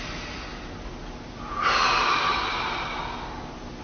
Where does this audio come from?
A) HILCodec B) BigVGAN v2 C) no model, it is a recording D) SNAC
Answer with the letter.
C